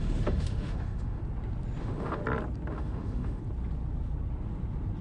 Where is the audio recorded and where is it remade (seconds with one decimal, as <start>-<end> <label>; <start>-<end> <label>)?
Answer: 0.0-1.2 remade; 1.2-1.8 recorded; 1.8-2.2 remade; 2.2-2.7 recorded; 2.7-3.4 remade; 3.4-5.0 recorded